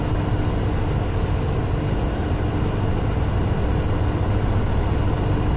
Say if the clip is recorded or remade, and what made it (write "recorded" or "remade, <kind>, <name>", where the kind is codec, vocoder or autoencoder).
recorded